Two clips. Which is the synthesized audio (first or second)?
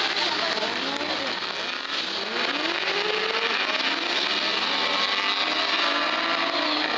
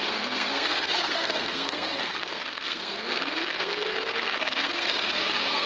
second